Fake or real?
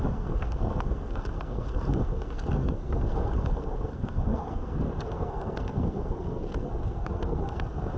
fake